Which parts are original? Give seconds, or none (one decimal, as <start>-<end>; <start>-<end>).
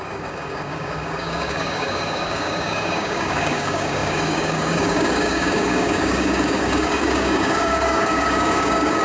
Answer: none